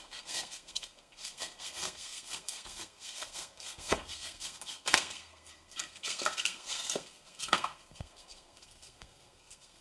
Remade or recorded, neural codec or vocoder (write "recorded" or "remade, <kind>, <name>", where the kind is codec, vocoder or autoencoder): remade, codec, SNAC